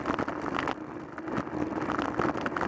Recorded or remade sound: recorded